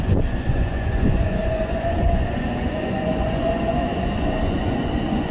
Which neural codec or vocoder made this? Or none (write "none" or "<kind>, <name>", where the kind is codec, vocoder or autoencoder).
vocoder, Vocos